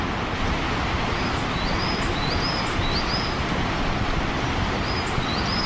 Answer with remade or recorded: recorded